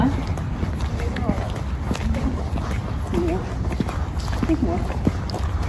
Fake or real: real